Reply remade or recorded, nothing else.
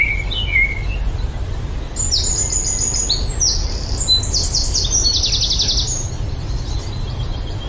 recorded